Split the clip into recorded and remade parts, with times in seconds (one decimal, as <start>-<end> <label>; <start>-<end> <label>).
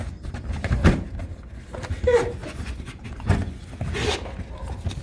0.0-2.4 recorded; 2.4-3.7 remade; 3.7-5.0 recorded